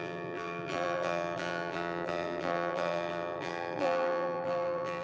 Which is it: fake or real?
fake